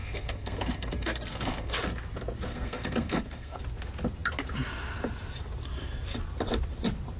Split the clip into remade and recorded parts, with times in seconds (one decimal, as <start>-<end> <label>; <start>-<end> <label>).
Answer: 0.0-1.8 remade; 1.8-2.5 recorded; 2.5-3.6 remade; 3.6-7.2 recorded